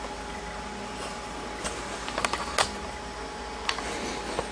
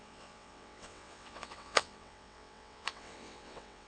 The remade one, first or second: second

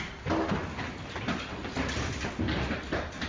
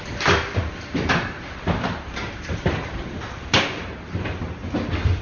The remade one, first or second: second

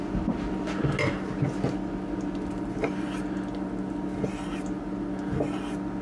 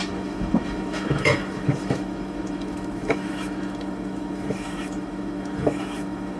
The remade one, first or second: second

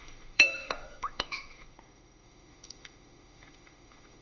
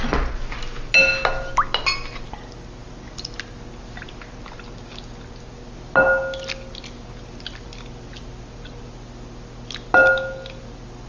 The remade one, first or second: first